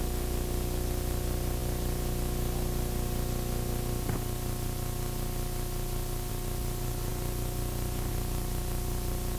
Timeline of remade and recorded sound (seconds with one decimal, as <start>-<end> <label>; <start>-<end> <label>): 0.0-9.4 recorded

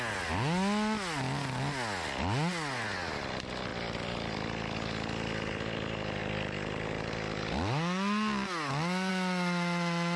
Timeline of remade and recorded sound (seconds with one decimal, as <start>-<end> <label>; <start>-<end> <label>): 0.0-3.7 recorded; 3.7-4.3 remade; 4.3-10.2 recorded

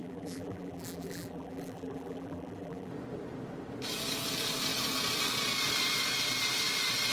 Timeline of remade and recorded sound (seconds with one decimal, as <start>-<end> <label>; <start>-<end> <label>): 0.0-2.9 remade; 2.9-7.1 recorded

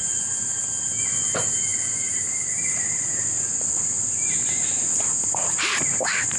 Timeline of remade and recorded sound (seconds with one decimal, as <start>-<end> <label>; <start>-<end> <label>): 0.0-1.7 recorded; 1.7-2.9 remade; 2.9-6.4 recorded

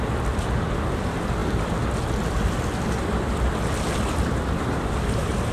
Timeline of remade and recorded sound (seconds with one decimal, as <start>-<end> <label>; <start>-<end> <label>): 0.0-5.5 recorded

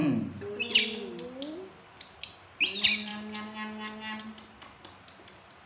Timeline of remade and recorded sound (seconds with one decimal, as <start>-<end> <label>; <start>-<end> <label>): 0.0-5.7 recorded